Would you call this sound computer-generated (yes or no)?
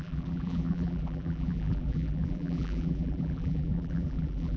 yes